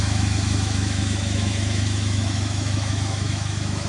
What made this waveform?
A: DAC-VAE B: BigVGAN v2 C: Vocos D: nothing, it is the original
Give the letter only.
A